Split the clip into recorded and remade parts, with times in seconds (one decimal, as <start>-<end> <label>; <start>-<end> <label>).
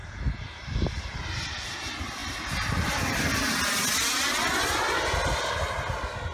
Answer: 0.0-6.3 recorded